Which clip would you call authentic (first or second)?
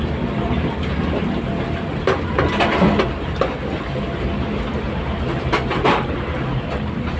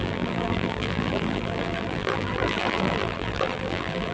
first